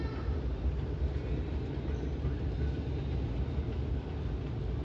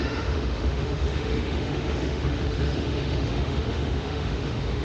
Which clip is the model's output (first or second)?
second